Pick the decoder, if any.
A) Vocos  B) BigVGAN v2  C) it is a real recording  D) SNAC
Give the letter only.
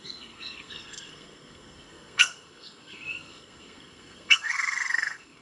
D